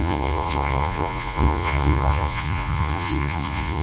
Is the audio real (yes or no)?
no